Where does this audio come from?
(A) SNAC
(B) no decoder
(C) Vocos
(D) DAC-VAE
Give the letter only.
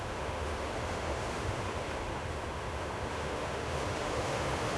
D